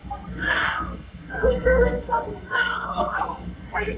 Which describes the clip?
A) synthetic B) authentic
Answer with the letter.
A